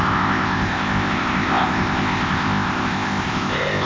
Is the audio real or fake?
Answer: fake